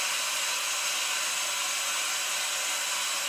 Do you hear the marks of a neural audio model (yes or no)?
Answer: no